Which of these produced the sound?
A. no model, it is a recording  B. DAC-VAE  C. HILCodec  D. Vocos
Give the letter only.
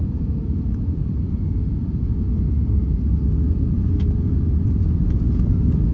D